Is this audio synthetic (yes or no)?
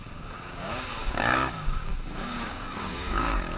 yes